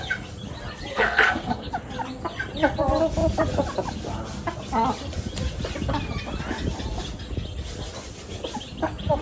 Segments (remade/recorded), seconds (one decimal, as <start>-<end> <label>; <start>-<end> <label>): 0.0-0.9 recorded; 0.9-1.7 remade; 1.7-9.2 recorded